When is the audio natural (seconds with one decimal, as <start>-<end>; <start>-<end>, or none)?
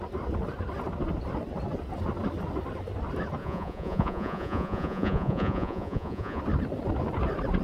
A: 0.0-3.4; 6.4-7.6